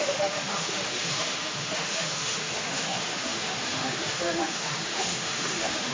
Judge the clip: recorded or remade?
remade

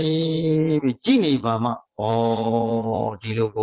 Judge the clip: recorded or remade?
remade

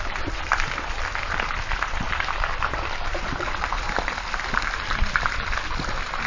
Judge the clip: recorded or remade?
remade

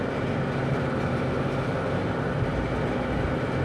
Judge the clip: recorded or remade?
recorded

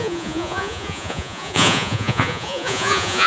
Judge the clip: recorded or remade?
remade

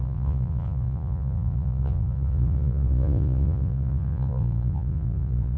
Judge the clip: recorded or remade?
remade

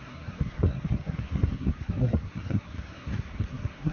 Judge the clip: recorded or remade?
remade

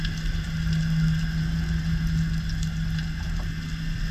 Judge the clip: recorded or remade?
recorded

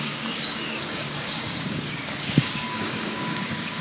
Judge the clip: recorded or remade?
remade